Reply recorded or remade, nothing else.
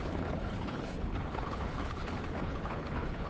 remade